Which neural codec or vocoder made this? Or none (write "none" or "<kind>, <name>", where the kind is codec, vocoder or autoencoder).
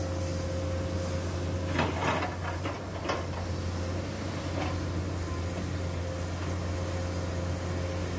none